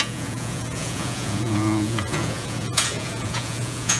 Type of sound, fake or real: fake